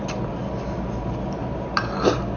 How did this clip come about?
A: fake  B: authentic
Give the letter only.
B